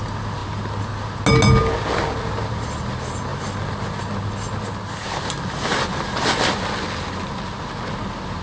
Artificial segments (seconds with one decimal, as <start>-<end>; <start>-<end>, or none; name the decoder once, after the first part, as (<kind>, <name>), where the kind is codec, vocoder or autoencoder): none